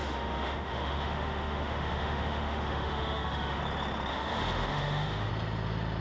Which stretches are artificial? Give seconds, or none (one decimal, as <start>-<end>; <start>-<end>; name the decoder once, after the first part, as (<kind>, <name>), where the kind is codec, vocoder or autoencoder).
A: 0.0-3.6 (autoencoder, DAC-VAE); 4.1-5.3